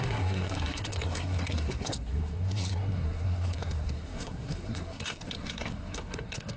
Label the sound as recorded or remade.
remade